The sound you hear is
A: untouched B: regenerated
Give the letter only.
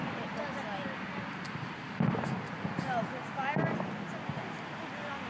A